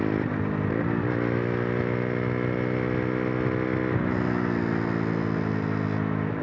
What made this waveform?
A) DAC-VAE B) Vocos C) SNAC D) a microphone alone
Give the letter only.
D